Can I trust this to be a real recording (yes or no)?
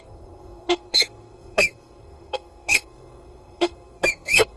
no